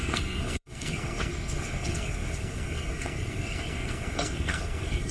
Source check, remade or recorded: remade